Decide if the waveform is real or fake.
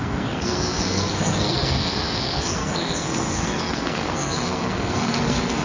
fake